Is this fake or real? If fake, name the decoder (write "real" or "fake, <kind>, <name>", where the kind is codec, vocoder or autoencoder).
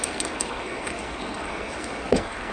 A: fake, codec, SNAC